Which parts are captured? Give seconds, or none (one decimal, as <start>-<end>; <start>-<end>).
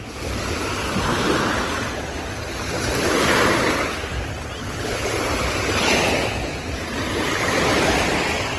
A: 0.0-4.6; 5.1-8.6